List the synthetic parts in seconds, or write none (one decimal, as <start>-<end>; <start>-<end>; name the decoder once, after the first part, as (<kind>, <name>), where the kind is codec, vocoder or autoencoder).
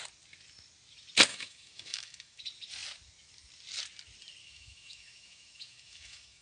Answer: 1.3-2.4 (autoencoder, DAC-VAE); 4.4-6.4